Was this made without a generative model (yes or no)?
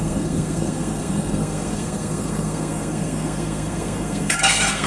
no